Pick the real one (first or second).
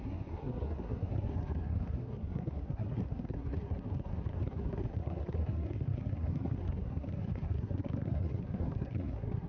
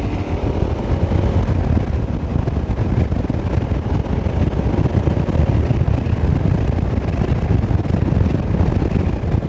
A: second